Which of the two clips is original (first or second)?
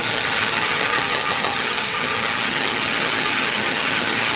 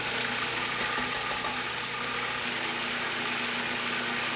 second